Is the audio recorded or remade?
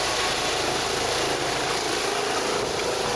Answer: recorded